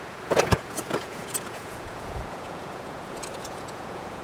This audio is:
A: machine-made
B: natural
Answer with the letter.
A